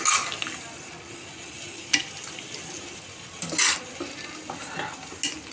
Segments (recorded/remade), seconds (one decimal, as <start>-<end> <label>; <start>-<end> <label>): 0.0-5.5 recorded